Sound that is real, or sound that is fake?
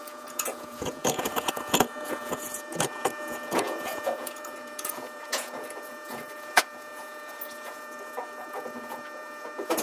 fake